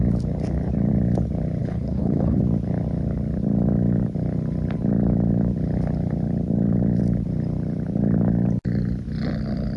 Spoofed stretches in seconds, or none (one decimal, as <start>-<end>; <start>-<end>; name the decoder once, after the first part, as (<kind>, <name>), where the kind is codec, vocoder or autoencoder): 1.6-2.4 (codec, HILCodec)